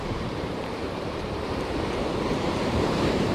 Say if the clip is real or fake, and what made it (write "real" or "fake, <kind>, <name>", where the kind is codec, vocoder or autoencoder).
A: fake, vocoder, BigVGAN v2